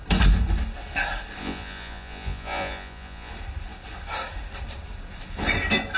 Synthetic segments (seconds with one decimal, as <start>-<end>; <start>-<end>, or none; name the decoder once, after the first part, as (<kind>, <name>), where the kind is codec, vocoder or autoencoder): 1.4-3.3 (vocoder, Vocos)